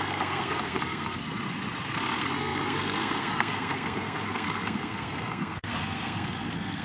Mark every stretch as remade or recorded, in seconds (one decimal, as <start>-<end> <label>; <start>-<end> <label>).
0.0-1.2 remade; 1.2-1.8 recorded; 1.8-6.8 remade